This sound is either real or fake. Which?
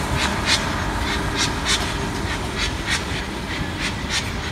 real